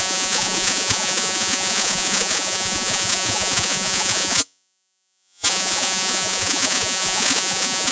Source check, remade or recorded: remade